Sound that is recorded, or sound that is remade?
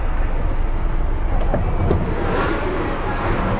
recorded